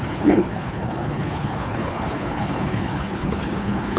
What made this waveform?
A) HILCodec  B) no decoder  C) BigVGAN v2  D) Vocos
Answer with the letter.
A